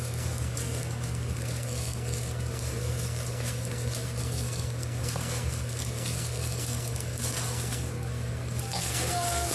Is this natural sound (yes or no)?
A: no